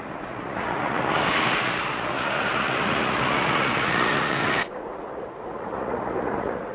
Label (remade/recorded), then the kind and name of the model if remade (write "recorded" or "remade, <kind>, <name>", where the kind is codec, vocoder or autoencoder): remade, vocoder, Vocos